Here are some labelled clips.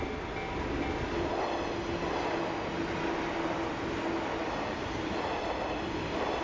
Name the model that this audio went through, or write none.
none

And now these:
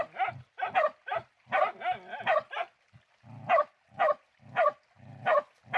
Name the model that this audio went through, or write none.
none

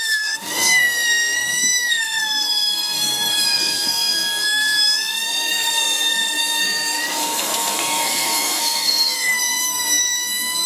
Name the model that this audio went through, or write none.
codec, SNAC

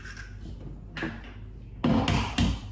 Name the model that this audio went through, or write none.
none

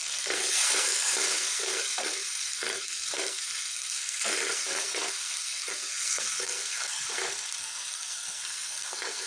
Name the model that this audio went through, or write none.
codec, SNAC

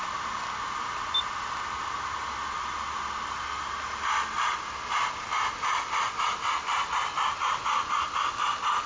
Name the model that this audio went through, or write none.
none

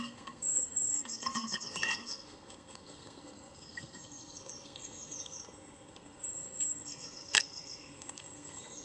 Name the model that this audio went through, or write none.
codec, SNAC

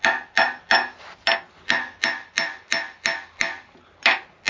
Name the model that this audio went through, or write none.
none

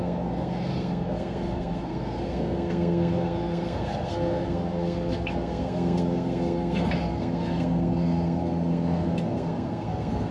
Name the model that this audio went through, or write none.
codec, SNAC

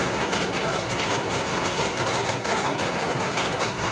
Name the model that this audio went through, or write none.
codec, SNAC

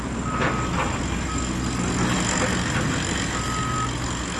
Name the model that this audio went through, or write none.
none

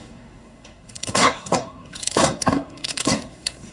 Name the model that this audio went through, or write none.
codec, SNAC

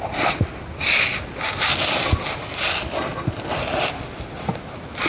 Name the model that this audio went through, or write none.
none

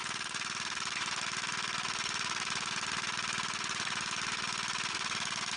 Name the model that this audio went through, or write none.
none